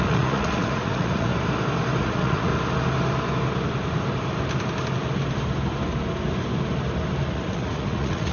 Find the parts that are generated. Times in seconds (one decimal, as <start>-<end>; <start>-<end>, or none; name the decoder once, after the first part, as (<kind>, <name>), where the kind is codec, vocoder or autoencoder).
0.0-1.3 (vocoder, Vocos); 2.0-2.5; 7.3-8.3